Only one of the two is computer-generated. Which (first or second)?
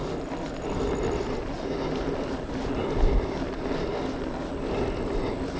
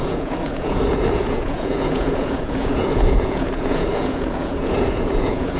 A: second